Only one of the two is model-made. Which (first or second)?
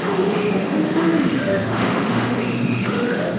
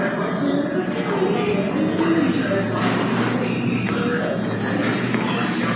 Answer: first